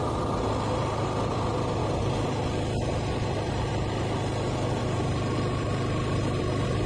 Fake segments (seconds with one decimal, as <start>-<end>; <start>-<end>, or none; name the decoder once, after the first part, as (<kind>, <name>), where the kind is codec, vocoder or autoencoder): none